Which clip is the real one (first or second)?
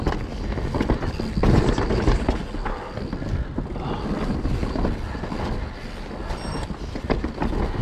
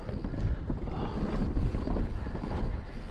first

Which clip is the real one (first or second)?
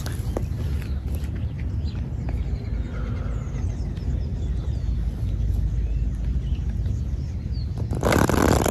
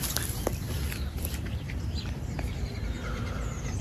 first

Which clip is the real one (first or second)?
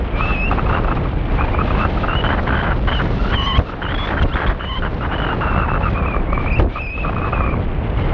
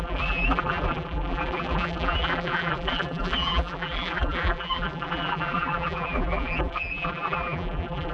first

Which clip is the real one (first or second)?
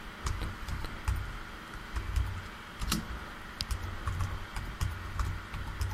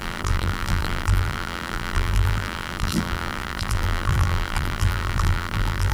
first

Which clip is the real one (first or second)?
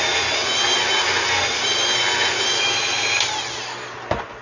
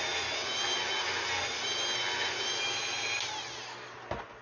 second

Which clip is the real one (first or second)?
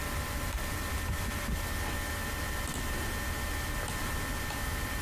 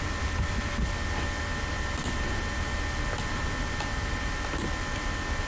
second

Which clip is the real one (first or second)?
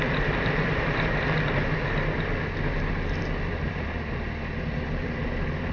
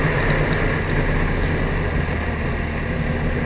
second